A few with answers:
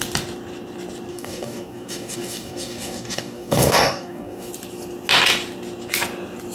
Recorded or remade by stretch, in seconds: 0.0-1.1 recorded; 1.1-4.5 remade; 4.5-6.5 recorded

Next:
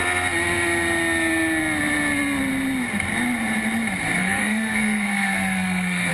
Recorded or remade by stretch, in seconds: 0.0-4.2 recorded; 4.2-6.1 remade

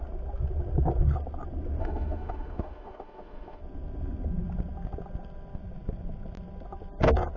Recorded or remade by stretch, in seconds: 0.0-1.8 recorded; 1.8-3.6 remade; 3.6-7.4 recorded

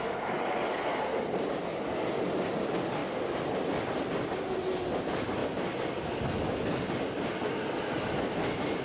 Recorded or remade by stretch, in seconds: 0.0-1.7 recorded; 1.7-2.6 remade; 2.6-3.0 recorded; 3.0-4.5 remade; 4.5-8.8 recorded

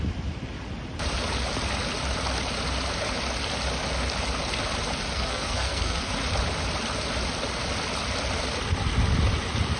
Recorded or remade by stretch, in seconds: 0.0-5.1 recorded; 5.1-6.1 remade; 6.1-9.8 recorded